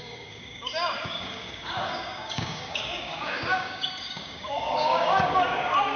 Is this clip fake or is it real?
fake